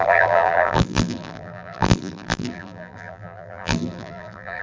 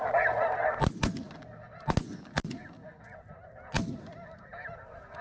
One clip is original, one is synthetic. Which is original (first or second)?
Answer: second